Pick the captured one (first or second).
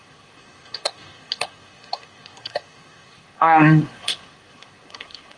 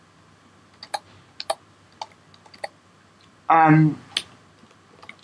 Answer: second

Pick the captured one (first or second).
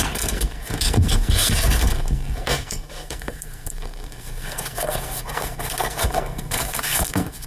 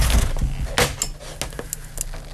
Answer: second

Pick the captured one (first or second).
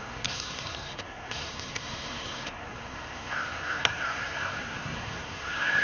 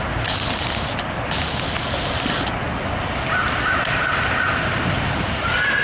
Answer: second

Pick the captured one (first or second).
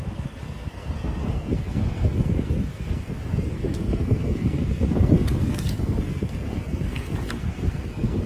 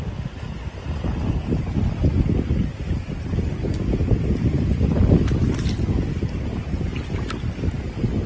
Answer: second